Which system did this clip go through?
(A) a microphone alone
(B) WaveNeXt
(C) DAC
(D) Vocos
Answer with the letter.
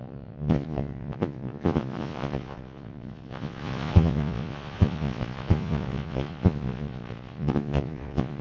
D